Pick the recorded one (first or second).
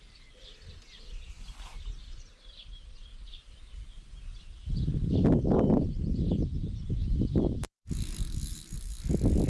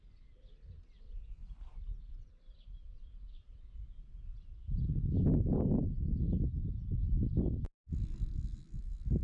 second